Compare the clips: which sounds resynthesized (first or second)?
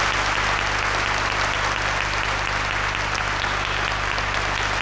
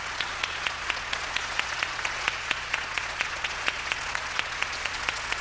second